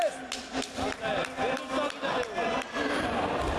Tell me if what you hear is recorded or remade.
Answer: recorded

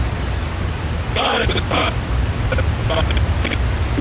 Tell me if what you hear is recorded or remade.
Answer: recorded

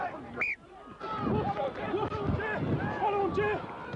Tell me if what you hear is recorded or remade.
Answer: recorded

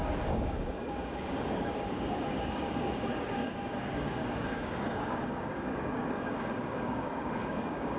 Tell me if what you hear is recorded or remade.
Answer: remade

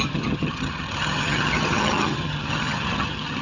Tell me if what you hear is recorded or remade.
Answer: remade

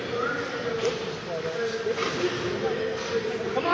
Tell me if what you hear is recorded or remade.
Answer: recorded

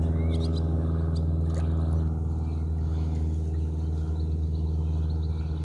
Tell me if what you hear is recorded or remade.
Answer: recorded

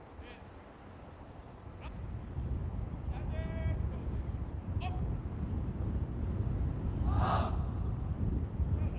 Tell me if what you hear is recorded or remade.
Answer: recorded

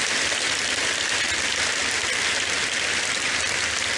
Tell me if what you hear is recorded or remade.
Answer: recorded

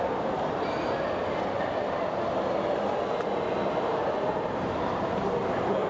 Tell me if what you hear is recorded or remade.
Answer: recorded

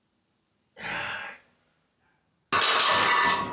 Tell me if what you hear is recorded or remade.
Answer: recorded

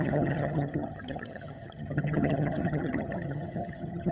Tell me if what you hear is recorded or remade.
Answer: remade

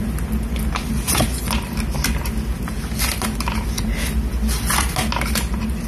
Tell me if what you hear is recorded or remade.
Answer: recorded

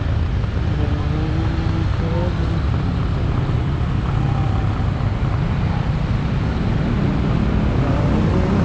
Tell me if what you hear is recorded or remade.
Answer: recorded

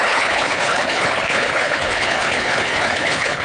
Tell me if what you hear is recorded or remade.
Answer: remade